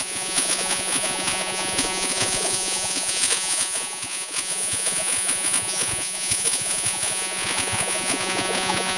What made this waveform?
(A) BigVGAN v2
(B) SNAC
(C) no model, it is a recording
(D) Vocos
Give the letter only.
D